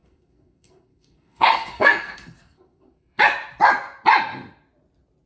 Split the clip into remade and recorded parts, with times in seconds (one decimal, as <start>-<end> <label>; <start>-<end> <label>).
0.0-3.2 remade; 3.2-5.3 recorded